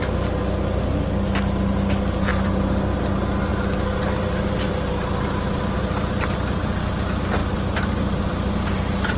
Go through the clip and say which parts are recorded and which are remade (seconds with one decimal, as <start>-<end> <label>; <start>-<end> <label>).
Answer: 0.0-2.3 recorded; 2.3-3.0 remade; 3.0-9.2 recorded